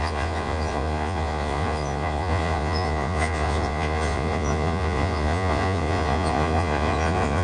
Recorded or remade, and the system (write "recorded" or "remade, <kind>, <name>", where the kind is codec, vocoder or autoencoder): remade, vocoder, Vocos